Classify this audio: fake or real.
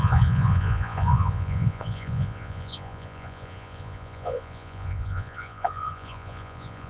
fake